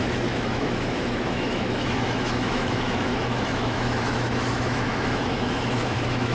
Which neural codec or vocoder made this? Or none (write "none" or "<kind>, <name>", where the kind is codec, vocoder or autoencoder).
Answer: autoencoder, DAC-VAE